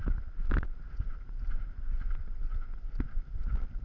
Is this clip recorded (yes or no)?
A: yes